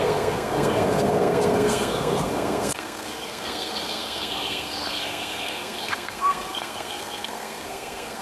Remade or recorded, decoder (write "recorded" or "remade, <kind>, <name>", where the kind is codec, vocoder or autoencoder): remade, codec, SNAC